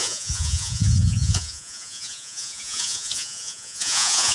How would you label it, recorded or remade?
remade